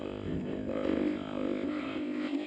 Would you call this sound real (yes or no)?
no